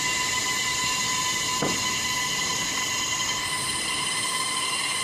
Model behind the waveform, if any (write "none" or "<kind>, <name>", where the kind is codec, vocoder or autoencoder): none